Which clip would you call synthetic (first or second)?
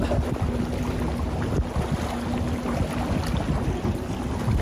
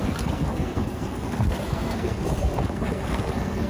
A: second